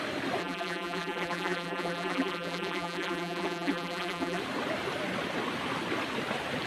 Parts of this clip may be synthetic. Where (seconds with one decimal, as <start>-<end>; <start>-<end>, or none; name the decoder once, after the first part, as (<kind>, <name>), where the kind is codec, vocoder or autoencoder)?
0.4-4.4 (vocoder, BigVGAN v2)